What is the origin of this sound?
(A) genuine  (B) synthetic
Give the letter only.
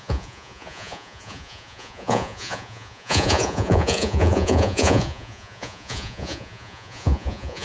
B